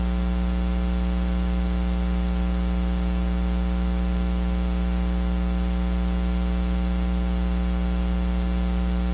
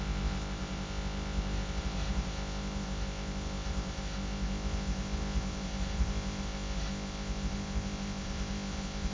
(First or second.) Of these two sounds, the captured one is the first